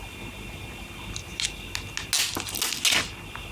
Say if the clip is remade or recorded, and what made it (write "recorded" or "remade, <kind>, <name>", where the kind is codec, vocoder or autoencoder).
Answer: recorded